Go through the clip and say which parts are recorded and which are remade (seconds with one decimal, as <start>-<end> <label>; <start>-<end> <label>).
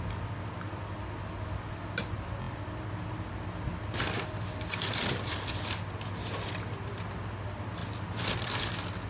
0.0-9.1 recorded